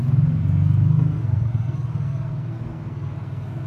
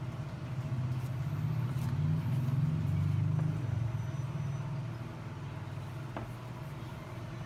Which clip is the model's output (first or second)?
first